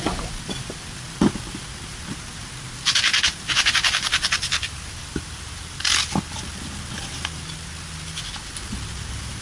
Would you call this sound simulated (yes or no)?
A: no